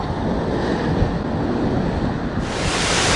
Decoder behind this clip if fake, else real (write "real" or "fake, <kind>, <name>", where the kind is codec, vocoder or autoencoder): real